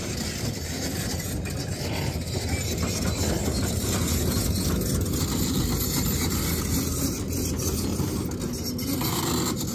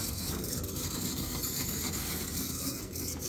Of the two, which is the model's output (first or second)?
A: second